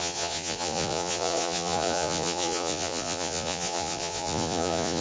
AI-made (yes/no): yes